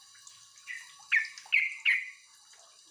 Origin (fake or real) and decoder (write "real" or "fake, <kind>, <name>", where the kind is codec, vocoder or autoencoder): real